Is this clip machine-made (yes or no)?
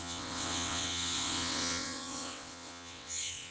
yes